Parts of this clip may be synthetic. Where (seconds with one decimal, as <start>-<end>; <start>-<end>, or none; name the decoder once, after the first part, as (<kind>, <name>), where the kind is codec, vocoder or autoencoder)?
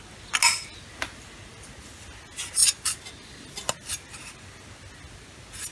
none